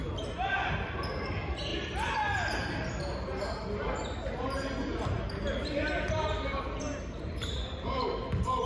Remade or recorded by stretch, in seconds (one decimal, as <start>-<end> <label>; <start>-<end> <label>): 0.0-6.5 recorded; 6.5-8.7 remade

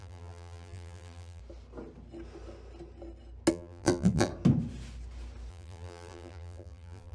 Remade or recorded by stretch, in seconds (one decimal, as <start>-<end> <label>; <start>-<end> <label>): 0.0-1.4 remade; 1.4-3.5 recorded; 3.5-4.3 remade; 4.3-5.5 recorded; 5.5-7.1 remade

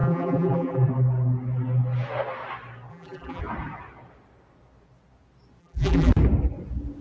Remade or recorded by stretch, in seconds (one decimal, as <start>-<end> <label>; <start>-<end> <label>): 0.0-0.9 remade; 0.9-2.9 recorded; 2.9-3.4 remade; 3.4-5.6 recorded; 5.6-6.1 remade; 6.1-7.0 recorded

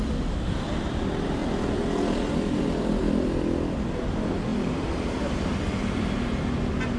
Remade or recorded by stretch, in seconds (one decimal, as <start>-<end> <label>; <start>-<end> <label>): 0.0-1.4 remade; 1.4-2.6 recorded; 2.6-7.0 remade

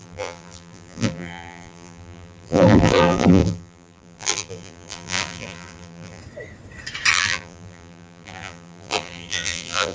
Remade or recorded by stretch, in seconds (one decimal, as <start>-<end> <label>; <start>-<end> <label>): 0.0-6.2 remade; 6.2-7.1 recorded; 7.1-9.9 remade

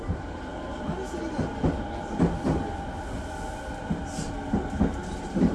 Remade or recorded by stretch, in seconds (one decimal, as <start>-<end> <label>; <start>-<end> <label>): 0.0-5.5 recorded

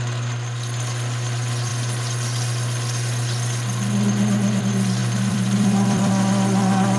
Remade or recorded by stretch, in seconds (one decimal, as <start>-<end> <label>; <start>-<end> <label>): 0.0-5.0 recorded; 5.0-6.1 remade; 6.1-7.0 recorded